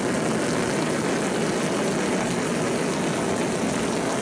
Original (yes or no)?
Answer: yes